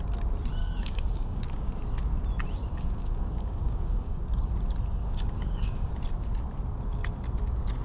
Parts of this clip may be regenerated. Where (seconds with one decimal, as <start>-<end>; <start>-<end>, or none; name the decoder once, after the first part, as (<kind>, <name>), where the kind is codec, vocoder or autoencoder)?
0.6-1.7 (codec, DAC); 2.7-4.5; 5.0-5.9